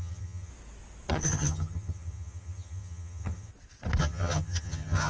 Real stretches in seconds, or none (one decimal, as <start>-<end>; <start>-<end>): 0.5-1.1; 3.5-4.0